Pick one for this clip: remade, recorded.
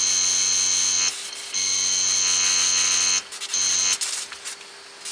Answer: recorded